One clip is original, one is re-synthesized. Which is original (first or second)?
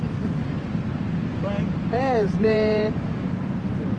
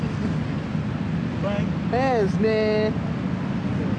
second